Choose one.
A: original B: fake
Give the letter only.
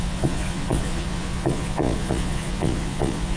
B